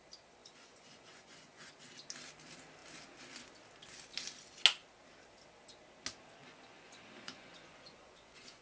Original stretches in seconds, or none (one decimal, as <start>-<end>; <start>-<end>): 0.0-0.4; 1.7-6.4